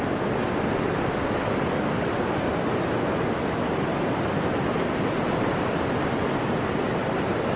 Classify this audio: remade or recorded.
recorded